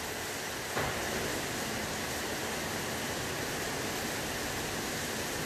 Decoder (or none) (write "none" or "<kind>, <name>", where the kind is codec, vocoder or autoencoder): none